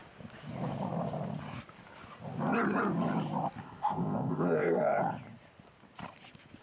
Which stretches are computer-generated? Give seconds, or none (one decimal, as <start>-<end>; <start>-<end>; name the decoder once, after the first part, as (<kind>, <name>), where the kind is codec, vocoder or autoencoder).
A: 3.6-5.0 (codec, ZipCodec)